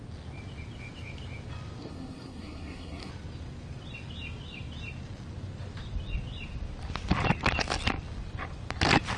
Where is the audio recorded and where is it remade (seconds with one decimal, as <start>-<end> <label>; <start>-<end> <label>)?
0.0-1.8 recorded; 1.8-3.1 remade; 3.1-9.2 recorded